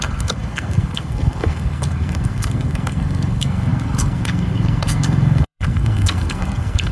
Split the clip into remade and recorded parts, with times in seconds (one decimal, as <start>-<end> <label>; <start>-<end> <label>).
0.0-6.9 remade